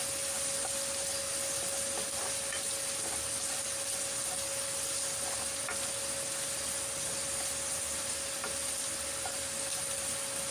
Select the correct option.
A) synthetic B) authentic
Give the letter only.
B